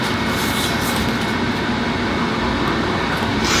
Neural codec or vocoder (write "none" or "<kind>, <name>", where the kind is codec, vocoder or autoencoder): none